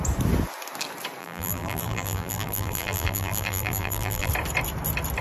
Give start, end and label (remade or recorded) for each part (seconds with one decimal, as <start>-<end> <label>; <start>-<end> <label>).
0.0-1.2 recorded; 1.2-4.3 remade; 4.3-5.2 recorded